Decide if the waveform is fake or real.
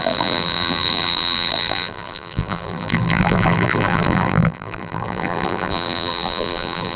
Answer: fake